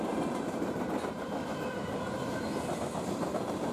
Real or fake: real